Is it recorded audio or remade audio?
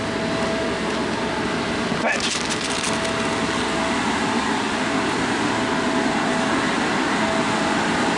recorded